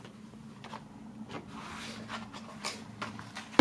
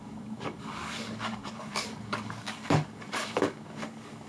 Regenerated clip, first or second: second